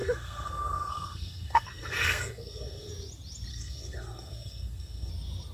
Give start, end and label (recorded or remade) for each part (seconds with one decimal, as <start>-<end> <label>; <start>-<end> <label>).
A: 0.0-2.9 remade; 2.9-3.5 recorded; 3.5-5.1 remade; 5.1-5.5 recorded